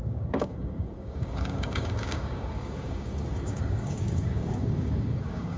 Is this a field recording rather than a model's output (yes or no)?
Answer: no